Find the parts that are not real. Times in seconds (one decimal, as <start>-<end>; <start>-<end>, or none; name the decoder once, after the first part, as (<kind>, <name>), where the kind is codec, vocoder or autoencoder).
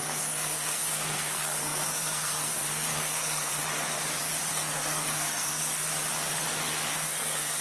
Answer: 0.0-3.5 (codec, SNAC); 4.5-5.9; 6.9-7.6